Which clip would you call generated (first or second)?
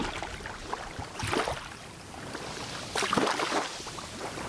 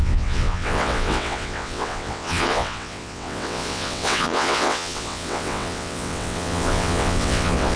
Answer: second